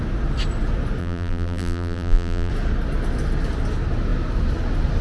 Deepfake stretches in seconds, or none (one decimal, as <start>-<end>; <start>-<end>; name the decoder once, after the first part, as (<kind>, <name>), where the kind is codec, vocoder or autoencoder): 1.0-2.5 (vocoder, BigVGAN v2)